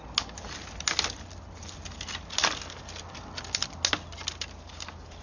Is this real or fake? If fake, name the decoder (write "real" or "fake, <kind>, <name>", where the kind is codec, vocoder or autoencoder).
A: real